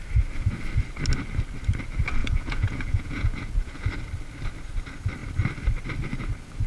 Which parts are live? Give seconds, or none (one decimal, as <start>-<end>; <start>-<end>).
0.0-2.2; 3.9-6.7